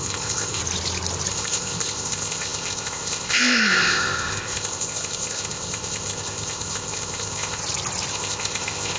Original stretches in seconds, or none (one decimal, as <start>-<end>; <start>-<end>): 0.6-1.3; 7.6-8.1